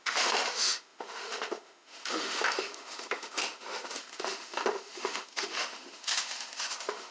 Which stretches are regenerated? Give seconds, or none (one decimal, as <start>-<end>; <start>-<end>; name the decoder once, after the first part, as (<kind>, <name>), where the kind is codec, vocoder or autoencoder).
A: 0.0-7.1 (autoencoder, DAC-VAE)